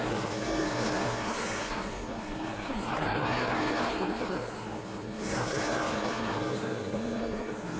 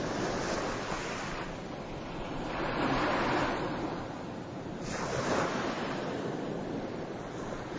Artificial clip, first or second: first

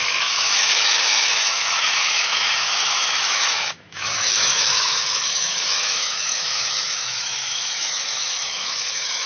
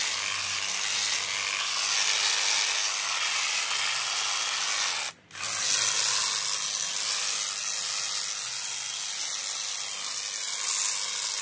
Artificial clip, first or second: first